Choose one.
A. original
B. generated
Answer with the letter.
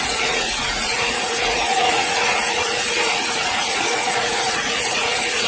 B